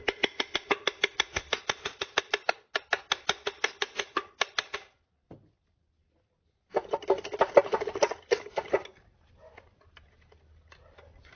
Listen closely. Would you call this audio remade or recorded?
recorded